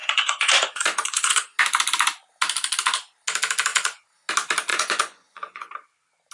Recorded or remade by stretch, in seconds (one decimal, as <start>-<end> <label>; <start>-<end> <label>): 0.0-1.6 remade; 1.6-3.7 recorded; 3.7-4.3 remade; 4.3-4.7 recorded; 4.7-5.7 remade; 5.7-6.3 recorded